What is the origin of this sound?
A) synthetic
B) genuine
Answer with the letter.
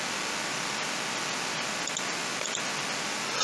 B